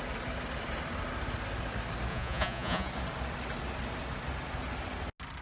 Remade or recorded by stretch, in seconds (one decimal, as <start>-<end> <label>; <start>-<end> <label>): 0.0-2.1 recorded; 2.1-2.9 remade; 2.9-5.4 recorded